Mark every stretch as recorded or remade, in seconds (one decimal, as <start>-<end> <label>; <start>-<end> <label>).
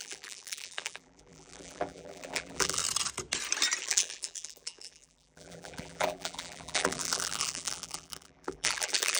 0.0-2.8 remade; 2.8-3.8 recorded; 3.8-9.2 remade